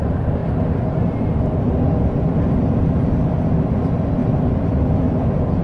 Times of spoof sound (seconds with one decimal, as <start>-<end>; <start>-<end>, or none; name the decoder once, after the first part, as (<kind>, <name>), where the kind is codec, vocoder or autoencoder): none